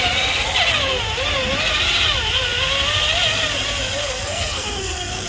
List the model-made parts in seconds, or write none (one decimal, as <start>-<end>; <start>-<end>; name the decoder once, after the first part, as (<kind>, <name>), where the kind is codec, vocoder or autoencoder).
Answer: 4.0-5.3 (codec, SNAC)